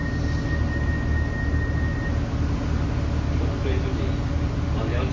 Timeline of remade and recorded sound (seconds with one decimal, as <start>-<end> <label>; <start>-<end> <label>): 0.0-5.1 recorded